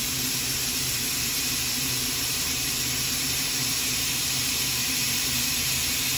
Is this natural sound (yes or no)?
no